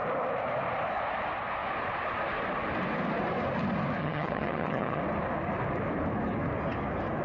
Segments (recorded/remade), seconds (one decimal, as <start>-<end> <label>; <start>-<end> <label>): 0.0-4.0 recorded; 4.0-5.0 remade; 5.0-7.2 recorded